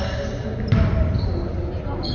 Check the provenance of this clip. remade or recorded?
recorded